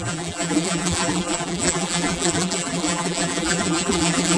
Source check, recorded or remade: remade